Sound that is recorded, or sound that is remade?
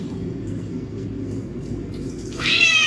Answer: remade